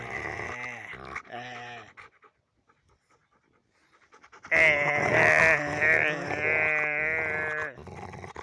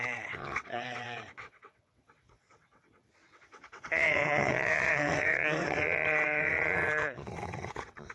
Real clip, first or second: first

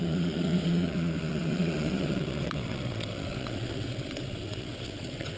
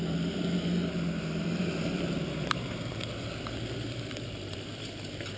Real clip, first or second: second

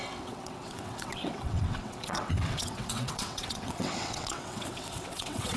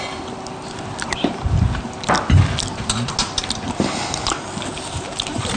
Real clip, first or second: second